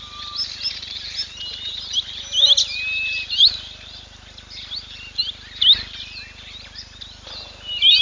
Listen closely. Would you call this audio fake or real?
real